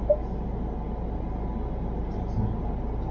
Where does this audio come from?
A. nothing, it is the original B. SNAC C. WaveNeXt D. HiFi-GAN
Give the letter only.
A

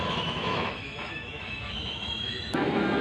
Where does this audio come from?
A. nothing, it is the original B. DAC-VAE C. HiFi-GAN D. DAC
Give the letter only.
B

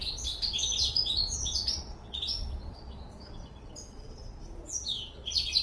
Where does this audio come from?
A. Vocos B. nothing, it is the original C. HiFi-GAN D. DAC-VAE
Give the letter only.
A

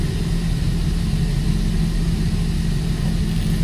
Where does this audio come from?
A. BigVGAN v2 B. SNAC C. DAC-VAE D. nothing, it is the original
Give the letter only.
D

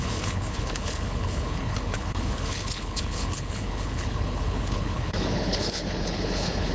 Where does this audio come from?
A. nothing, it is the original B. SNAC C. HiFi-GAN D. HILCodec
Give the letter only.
D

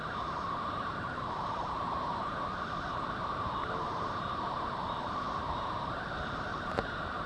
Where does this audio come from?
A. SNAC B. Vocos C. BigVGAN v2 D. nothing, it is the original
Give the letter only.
C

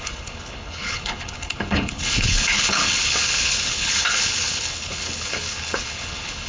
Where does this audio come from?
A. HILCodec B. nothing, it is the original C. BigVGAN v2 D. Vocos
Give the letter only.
A